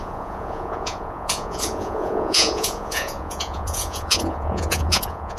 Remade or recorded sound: remade